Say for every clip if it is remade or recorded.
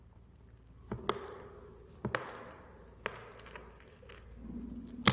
recorded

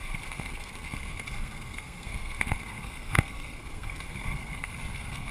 remade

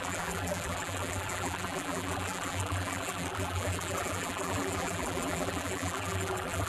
remade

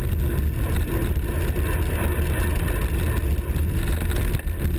recorded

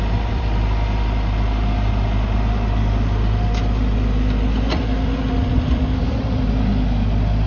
recorded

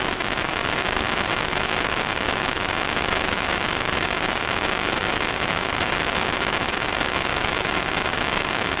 remade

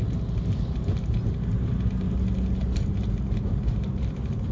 recorded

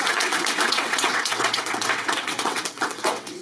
remade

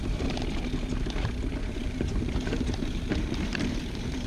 remade